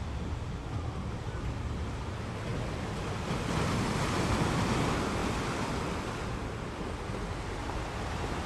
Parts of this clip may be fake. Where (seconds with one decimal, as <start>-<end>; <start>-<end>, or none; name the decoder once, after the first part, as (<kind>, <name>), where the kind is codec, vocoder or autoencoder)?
0.6-2.0 (vocoder, BigVGAN v2)